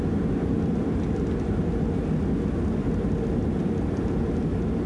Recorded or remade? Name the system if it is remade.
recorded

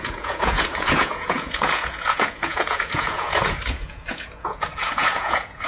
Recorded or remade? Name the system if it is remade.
remade, vocoder, Vocos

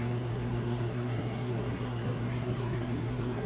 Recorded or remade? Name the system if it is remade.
remade, codec, SNAC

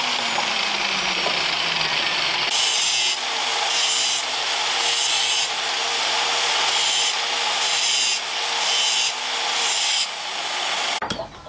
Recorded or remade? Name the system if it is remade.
recorded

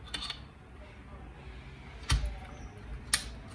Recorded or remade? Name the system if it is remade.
recorded